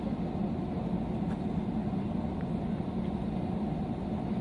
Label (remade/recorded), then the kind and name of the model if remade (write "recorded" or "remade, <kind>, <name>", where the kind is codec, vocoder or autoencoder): recorded